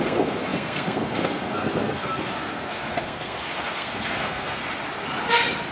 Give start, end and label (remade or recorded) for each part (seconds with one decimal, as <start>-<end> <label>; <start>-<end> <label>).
0.0-4.6 remade; 4.6-5.7 recorded

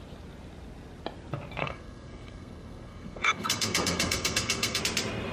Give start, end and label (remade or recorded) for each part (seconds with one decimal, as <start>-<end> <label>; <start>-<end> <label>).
0.0-1.6 recorded; 1.6-4.8 remade; 4.8-5.3 recorded